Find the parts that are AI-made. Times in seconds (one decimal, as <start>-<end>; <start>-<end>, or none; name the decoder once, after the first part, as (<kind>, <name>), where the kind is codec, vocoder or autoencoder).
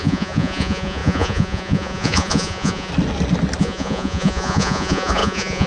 0.0-2.9 (vocoder, Vocos); 3.6-5.7